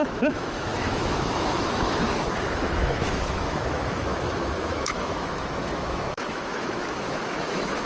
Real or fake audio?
fake